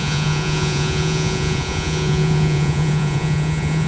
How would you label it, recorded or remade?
remade